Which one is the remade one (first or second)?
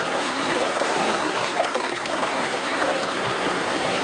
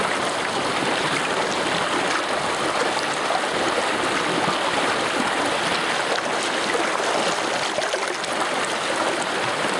first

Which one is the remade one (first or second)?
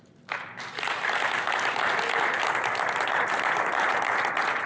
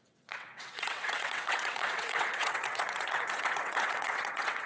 second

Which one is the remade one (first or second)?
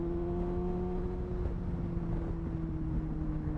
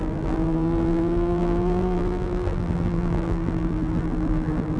second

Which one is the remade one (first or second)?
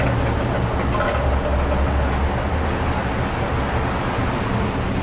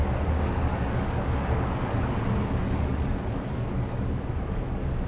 second